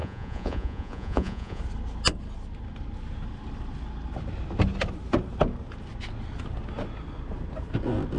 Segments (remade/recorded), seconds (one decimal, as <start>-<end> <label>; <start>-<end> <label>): 0.0-1.6 remade; 1.6-8.2 recorded